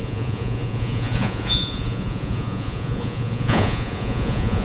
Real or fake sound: fake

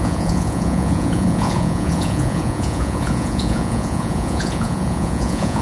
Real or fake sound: fake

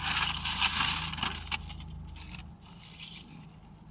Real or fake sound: real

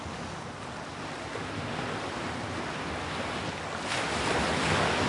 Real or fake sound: real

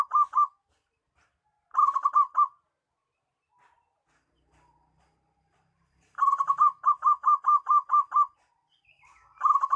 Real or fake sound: real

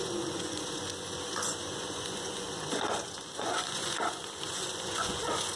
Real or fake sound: fake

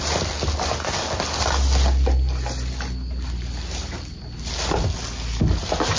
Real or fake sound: real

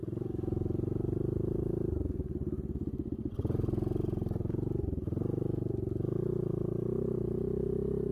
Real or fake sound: real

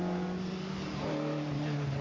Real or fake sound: real